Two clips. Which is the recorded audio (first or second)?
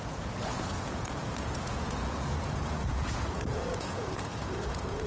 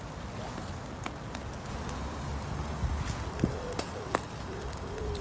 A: second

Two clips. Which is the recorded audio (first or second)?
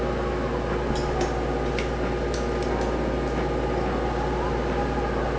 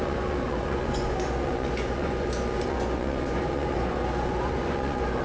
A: first